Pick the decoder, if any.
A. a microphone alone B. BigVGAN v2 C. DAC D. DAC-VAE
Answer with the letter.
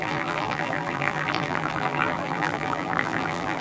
B